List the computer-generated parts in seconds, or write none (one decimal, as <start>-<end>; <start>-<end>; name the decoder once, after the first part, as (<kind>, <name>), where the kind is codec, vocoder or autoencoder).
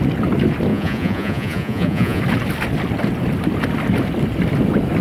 0.7-2.2 (vocoder, Vocos)